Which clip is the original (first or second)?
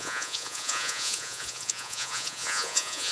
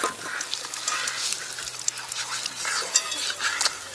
second